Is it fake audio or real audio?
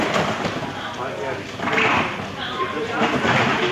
real